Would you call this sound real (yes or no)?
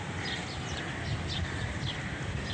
yes